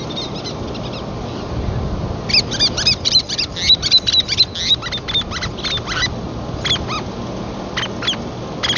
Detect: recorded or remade recorded